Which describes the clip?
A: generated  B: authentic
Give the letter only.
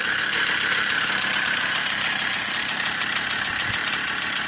A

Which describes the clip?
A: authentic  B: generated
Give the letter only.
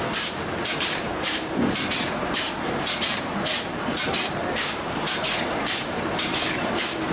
B